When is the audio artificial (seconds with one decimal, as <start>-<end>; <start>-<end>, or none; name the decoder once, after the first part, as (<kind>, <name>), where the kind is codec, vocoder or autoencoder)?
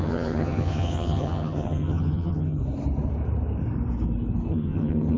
0.0-2.6 (vocoder, HiFi-GAN); 4.5-5.2